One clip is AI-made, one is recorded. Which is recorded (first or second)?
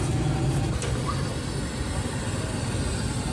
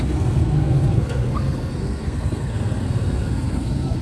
first